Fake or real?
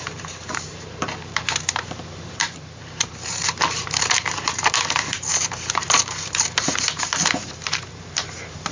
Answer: fake